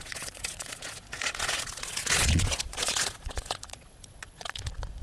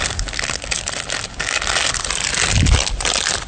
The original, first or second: second